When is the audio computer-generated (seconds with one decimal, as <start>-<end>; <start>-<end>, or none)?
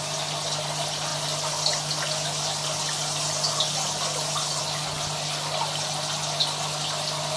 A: none